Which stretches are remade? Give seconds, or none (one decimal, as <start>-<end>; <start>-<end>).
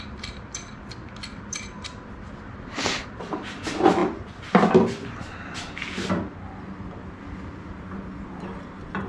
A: none